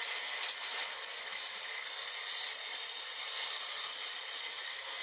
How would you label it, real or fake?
real